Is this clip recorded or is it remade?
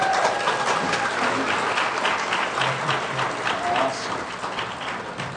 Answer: recorded